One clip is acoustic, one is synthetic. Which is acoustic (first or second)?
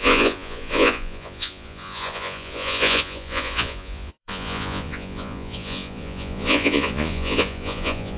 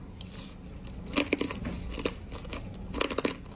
second